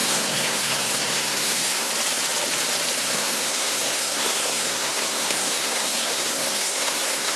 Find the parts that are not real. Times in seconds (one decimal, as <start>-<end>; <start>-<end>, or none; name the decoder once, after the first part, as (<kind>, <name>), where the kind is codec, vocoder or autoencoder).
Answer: 0.0-1.9 (codec, SNAC); 3.0-7.4